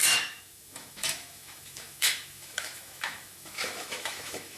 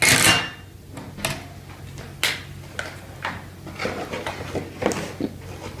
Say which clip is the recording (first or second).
second